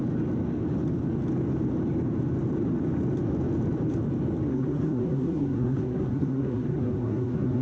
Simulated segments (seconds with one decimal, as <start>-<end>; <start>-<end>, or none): 4.5-7.6